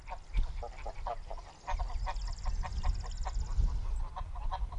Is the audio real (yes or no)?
yes